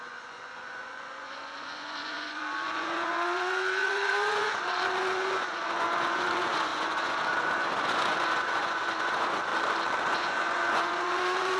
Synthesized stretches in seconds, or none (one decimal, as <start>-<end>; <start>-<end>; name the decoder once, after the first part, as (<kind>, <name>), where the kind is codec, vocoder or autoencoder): 0.0-9.5 (vocoder, Vocos); 10.0-11.6